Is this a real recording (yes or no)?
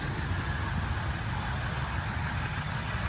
yes